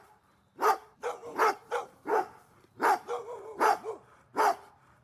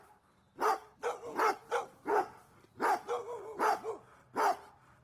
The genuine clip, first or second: second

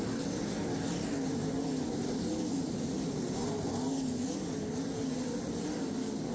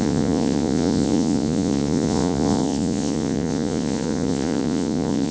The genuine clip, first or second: first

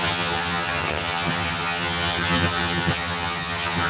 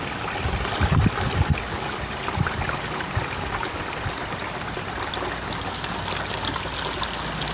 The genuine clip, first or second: second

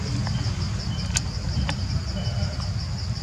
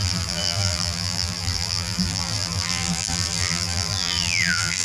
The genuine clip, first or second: first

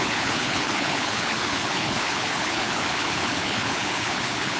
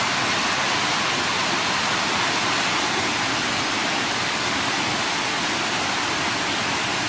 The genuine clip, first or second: second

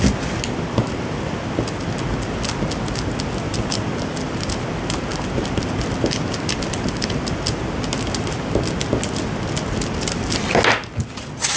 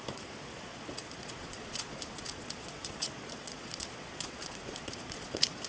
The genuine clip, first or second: first